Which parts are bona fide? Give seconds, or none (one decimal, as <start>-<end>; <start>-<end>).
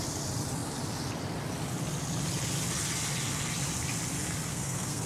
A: 0.0-4.5